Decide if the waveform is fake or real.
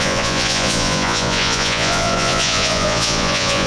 fake